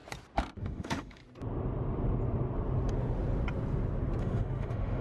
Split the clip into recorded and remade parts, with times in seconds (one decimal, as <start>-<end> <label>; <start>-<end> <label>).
0.0-0.6 recorded; 0.6-1.2 remade; 1.2-4.2 recorded; 4.2-5.0 remade

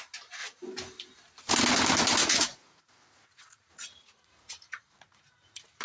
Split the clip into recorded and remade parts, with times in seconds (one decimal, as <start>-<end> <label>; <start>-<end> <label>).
0.0-2.2 recorded; 2.2-5.8 remade